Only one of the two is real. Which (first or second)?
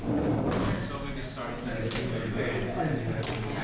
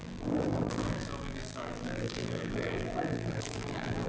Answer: first